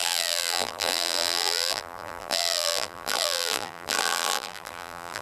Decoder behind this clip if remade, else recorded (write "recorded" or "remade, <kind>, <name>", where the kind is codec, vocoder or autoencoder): remade, vocoder, BigVGAN v2